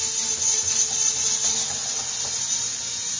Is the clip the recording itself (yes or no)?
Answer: yes